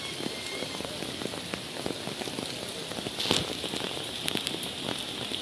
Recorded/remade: recorded